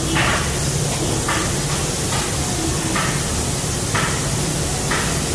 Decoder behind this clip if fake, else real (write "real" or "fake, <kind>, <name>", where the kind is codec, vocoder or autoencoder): real